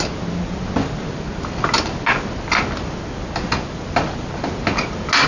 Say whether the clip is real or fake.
real